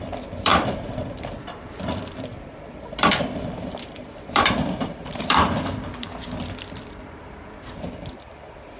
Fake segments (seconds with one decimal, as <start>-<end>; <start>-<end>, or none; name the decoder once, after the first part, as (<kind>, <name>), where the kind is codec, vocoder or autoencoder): 0.0-8.8 (vocoder, BigVGAN v2)